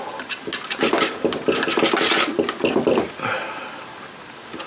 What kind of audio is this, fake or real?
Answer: real